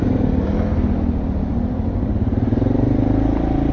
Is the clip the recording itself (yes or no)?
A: yes